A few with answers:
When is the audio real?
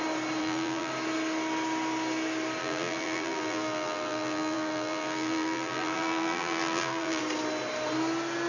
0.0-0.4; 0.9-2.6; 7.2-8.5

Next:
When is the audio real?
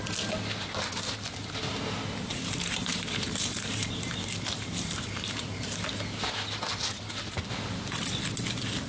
0.0-2.3; 5.7-8.9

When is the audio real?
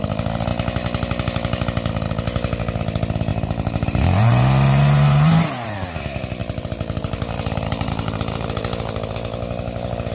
0.0-3.3; 6.0-6.4; 8.6-10.1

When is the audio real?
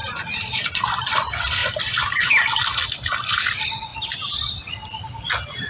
0.8-5.7